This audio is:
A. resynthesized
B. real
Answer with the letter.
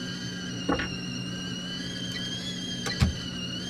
B